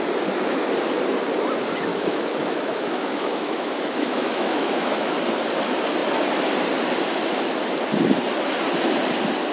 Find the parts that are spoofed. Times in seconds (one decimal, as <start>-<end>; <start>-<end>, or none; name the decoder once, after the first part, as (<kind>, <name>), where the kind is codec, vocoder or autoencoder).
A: 1.9-5.1 (autoencoder, DAC-VAE)

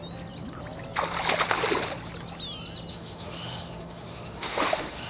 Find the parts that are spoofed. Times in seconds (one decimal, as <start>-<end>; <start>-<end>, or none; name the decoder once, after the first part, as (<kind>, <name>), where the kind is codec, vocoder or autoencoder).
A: 2.9-5.1 (autoencoder, DAC-VAE)

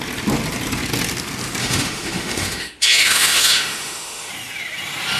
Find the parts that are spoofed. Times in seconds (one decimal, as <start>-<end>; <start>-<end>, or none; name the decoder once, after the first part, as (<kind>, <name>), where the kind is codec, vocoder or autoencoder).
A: 1.6-4.3 (autoencoder, DAC-VAE)

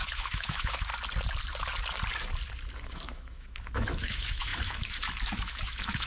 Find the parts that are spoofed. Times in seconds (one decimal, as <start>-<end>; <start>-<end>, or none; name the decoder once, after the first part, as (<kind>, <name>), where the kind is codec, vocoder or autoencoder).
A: 0.0-0.9 (autoencoder, DAC-VAE); 2.9-6.1

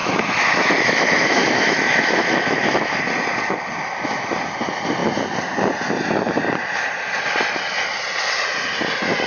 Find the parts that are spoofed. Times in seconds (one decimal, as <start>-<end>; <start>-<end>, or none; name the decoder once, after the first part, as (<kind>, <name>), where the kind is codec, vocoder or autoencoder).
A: 0.0-3.0 (autoencoder, DAC-VAE)

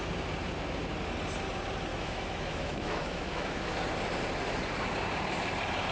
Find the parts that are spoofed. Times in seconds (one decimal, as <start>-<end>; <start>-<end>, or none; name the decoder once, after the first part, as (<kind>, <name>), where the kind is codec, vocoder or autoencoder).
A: 1.9-3.7 (autoencoder, DAC-VAE)